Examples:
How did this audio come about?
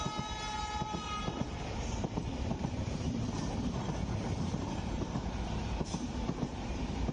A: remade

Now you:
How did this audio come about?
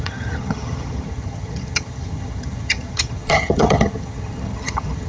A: remade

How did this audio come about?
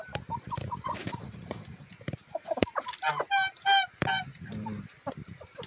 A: remade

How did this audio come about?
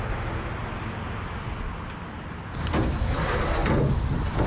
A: recorded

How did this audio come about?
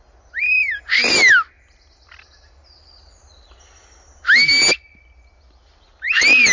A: recorded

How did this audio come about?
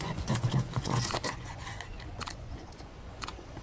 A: remade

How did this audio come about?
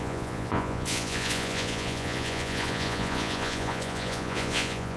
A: remade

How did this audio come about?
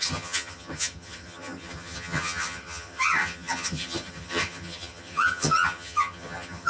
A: remade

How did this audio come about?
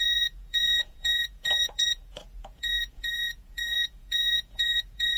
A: remade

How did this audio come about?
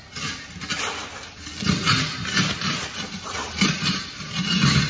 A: recorded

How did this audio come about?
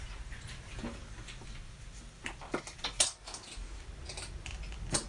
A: recorded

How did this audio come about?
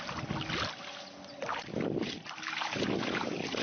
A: recorded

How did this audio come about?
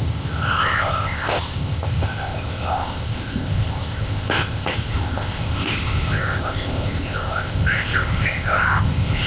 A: remade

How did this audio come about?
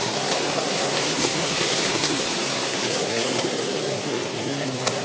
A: remade